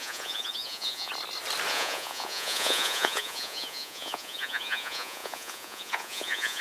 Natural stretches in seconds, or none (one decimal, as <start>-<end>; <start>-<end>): 1.1-1.7